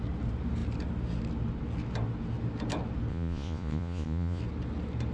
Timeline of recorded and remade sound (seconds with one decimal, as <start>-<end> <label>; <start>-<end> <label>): 0.0-3.1 recorded; 3.1-4.4 remade; 4.4-5.1 recorded